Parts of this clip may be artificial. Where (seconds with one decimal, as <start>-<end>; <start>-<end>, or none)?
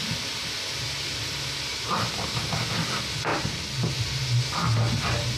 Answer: 1.7-2.2; 3.3-3.9